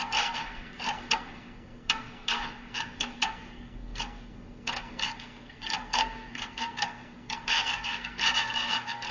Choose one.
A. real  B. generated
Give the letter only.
B